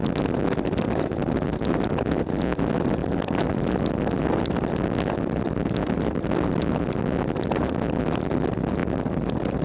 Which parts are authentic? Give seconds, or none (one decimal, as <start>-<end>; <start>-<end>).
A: 0.0-3.0; 6.6-8.8